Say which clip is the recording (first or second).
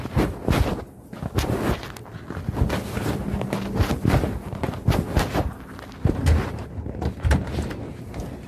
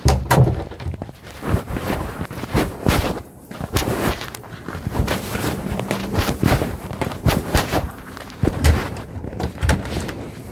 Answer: first